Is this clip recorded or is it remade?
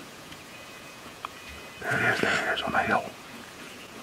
remade